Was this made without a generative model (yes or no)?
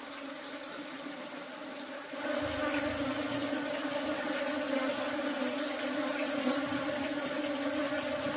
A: yes